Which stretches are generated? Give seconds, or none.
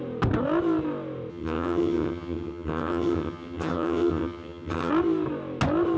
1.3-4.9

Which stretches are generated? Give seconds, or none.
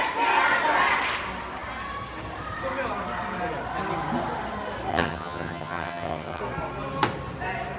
4.9-6.4